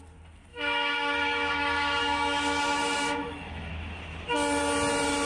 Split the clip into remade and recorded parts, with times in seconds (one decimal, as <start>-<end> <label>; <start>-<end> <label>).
0.0-0.5 recorded; 0.5-3.7 remade; 3.7-5.3 recorded